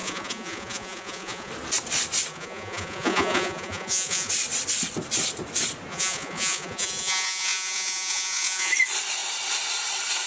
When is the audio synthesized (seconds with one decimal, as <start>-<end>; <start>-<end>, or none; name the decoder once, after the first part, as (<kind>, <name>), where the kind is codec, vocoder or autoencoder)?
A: 0.0-1.5 (vocoder, Vocos); 2.3-4.3; 5.9-8.7